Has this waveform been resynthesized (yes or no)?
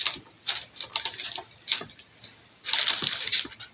no